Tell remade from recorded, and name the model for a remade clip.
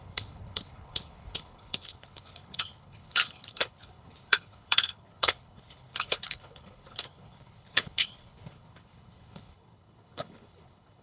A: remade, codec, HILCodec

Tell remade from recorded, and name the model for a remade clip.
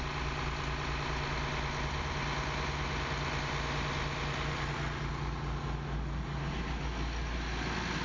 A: recorded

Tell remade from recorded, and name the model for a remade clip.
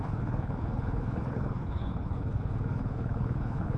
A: remade, codec, HILCodec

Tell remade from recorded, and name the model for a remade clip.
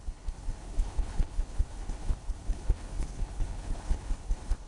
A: remade, codec, HILCodec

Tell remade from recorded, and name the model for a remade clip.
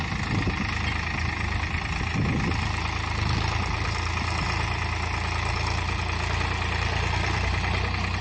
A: recorded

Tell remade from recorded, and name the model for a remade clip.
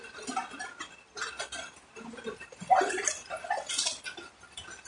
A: recorded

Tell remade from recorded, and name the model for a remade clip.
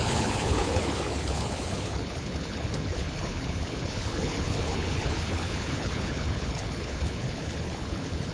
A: remade, codec, HILCodec